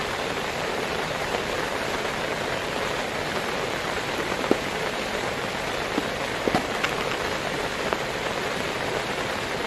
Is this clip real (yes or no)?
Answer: yes